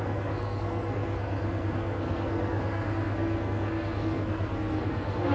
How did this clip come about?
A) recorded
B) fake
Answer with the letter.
B